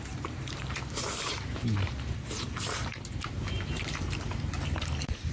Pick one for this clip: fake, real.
fake